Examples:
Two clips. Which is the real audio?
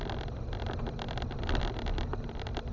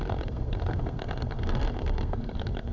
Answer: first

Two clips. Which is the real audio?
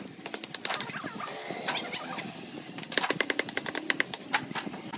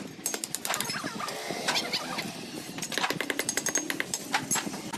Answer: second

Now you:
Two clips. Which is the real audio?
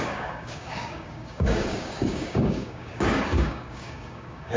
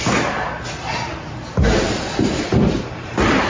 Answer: second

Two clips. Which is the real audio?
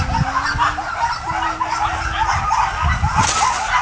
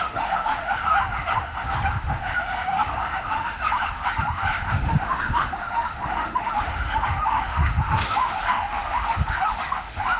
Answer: first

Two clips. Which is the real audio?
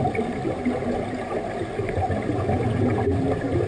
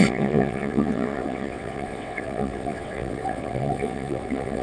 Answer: first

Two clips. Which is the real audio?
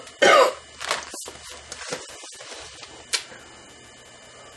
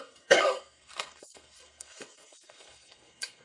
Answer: first